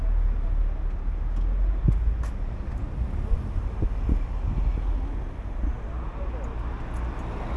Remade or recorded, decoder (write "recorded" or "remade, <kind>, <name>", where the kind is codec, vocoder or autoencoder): recorded